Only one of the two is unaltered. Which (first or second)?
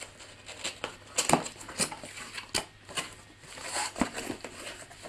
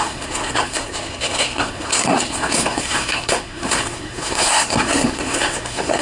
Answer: first